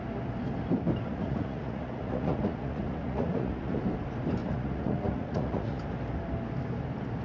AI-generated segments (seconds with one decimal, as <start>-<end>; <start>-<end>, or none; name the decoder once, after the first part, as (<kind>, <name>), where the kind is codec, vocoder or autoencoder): 1.1-3.8 (vocoder, Vocos); 4.4-5.8